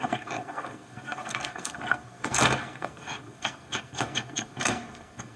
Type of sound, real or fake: fake